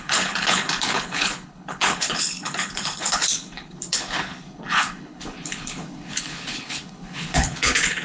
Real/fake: fake